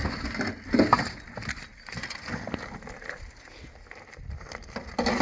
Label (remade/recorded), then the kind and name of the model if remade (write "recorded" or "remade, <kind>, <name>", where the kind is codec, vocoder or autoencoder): recorded